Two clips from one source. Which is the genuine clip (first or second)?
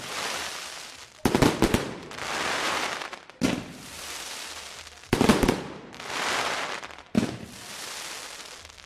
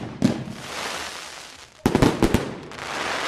second